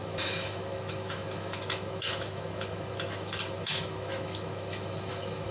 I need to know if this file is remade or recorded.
remade